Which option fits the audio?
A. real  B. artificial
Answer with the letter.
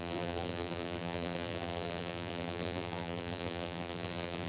B